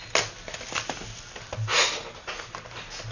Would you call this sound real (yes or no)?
yes